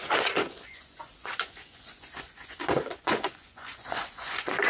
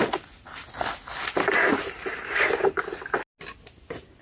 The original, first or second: second